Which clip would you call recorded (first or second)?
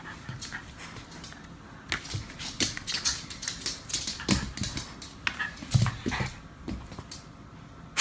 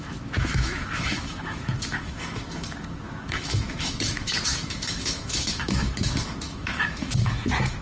first